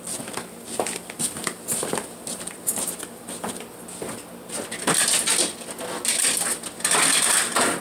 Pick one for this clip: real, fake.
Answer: real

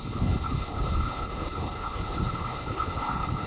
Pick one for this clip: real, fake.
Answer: fake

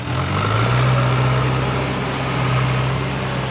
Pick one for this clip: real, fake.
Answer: real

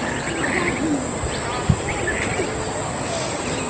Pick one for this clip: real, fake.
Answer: real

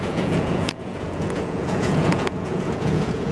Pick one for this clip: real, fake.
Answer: fake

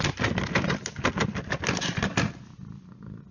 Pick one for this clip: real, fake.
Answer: real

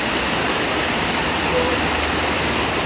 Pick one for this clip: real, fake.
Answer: real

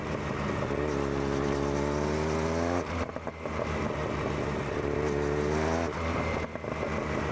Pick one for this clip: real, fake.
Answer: real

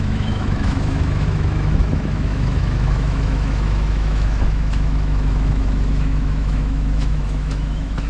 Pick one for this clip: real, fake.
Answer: fake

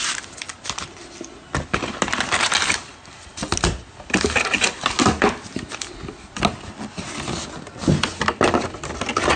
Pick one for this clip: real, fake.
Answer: real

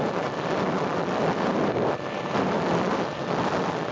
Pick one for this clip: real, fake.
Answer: real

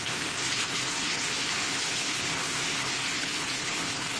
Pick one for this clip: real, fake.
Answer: fake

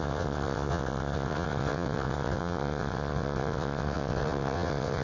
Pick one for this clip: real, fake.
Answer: fake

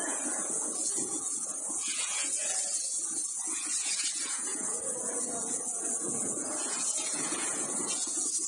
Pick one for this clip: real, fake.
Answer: fake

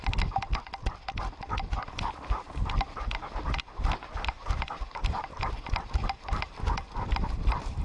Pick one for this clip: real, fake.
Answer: real